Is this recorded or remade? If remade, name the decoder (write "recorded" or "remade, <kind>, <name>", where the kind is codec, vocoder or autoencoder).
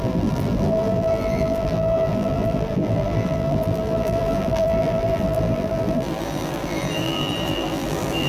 remade, vocoder, BigVGAN v2